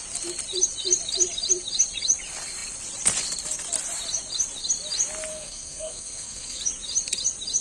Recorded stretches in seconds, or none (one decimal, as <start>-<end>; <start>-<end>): 0.0-5.3; 6.6-7.6